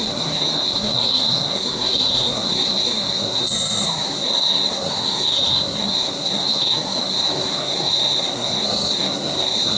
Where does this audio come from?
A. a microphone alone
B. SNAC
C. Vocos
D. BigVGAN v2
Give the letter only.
B